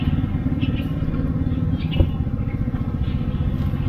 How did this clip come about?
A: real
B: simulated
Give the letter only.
A